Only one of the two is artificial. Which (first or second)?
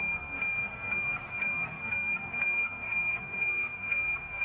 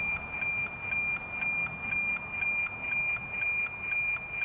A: first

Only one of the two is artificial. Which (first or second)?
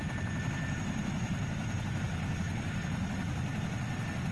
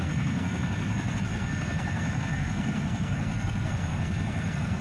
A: second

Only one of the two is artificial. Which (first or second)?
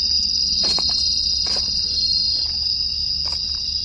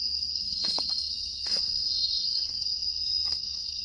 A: second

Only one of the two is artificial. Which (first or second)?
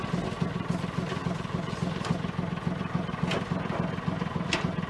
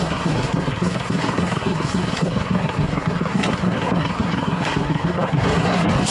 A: second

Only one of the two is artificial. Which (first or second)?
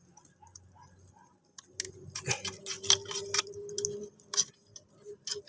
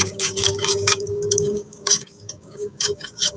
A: second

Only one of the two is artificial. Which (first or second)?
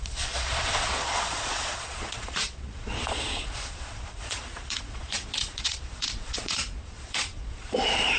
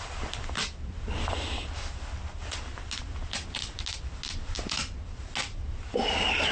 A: first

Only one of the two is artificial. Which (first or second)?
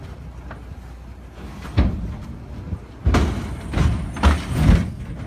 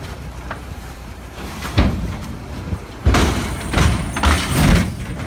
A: second